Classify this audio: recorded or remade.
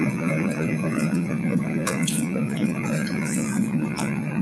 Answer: remade